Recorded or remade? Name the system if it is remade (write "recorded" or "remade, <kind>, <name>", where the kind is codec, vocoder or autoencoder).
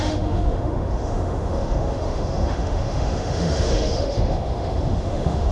remade, autoencoder, DAC-VAE